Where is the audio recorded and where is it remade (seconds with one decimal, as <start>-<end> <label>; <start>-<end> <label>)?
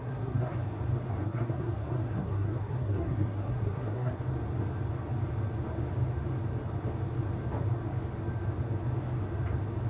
0.0-0.6 remade; 0.6-1.2 recorded; 1.2-4.2 remade; 4.2-9.9 recorded